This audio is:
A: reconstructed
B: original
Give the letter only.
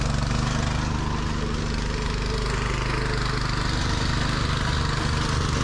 B